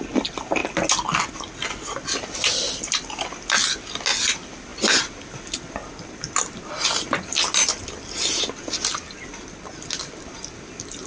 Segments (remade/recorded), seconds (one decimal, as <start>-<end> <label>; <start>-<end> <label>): 0.0-11.1 recorded

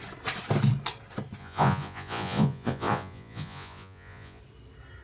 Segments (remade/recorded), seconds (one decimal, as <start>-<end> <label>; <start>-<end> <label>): 0.0-1.4 recorded; 1.4-4.4 remade; 4.4-5.0 recorded

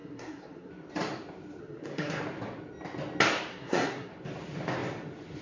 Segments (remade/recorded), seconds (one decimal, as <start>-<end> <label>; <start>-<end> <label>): 0.0-0.7 remade; 0.7-1.6 recorded; 1.6-2.2 remade; 2.2-3.5 recorded; 3.5-4.1 remade; 4.1-5.4 recorded

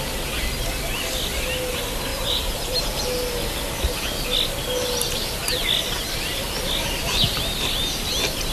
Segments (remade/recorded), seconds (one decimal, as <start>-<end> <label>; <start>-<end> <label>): 0.0-2.1 recorded; 2.1-3.0 remade; 3.0-8.5 recorded

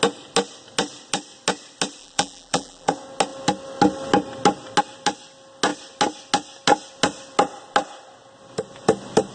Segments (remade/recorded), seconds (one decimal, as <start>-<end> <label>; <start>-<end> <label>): 0.0-2.0 recorded; 2.0-2.9 remade; 2.9-9.3 recorded

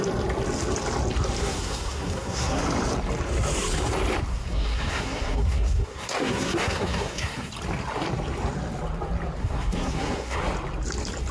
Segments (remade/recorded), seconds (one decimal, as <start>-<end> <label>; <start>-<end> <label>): 0.0-1.4 recorded; 1.4-2.6 remade; 2.6-4.3 recorded; 4.3-7.5 remade; 7.5-9.4 recorded; 9.4-10.4 remade; 10.4-11.3 recorded

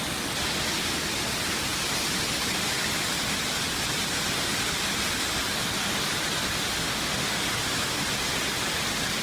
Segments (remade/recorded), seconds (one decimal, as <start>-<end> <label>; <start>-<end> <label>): 0.0-6.8 recorded; 6.8-7.3 remade; 7.3-9.2 recorded